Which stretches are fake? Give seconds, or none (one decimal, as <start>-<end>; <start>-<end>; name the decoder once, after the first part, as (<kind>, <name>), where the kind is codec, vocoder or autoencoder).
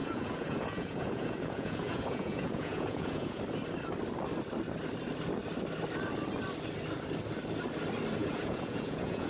0.0-3.4 (vocoder, Vocos); 8.2-9.3